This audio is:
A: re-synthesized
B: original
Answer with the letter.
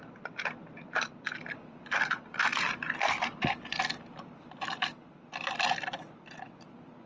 B